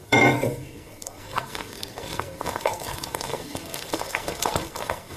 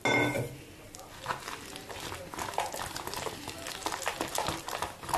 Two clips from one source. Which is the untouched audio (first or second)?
second